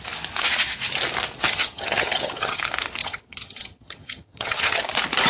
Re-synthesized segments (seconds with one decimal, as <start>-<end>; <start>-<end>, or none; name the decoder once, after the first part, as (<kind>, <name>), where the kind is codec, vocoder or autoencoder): 1.4-2.6 (vocoder, HiFi-GAN); 3.0-4.8